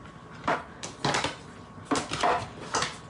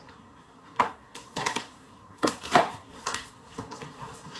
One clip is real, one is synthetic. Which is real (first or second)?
first